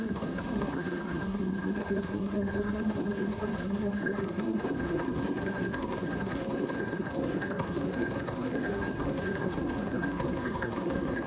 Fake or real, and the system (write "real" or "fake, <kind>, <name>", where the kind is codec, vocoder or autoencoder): fake, codec, SNAC